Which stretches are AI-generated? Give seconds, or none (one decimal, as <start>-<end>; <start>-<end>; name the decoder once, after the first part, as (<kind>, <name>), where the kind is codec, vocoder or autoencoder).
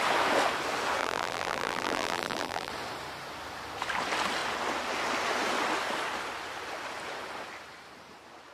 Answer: 1.0-2.7 (vocoder, BigVGAN v2)